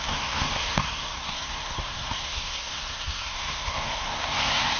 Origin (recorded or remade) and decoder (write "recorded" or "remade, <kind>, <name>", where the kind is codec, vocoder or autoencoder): remade, codec, SNAC